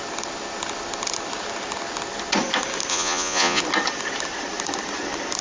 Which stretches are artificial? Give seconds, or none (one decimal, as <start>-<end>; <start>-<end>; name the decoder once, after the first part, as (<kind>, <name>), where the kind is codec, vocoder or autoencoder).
2.9-3.6 (vocoder, Vocos)